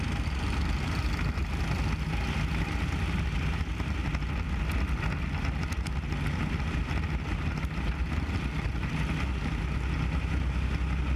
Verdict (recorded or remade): recorded